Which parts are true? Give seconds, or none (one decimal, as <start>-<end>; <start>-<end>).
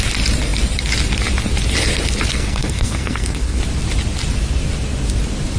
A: 0.0-2.3; 3.6-5.6